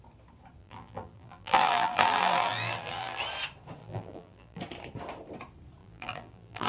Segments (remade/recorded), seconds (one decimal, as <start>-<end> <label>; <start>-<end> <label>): 0.0-0.6 recorded; 0.6-3.2 remade; 3.2-3.8 recorded; 3.8-4.6 remade; 4.6-5.8 recorded; 5.8-6.7 remade